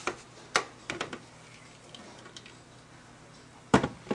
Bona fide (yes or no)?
yes